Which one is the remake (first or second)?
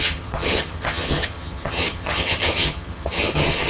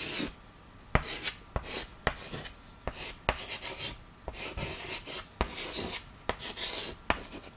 first